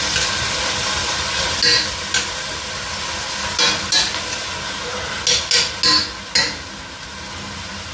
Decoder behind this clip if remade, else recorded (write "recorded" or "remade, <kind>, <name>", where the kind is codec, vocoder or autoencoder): recorded